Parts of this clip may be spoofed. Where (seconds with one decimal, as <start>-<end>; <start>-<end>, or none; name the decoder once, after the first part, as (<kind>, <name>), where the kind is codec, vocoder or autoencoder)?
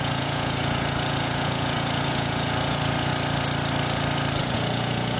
0.0-3.1 (vocoder, Vocos); 4.4-5.2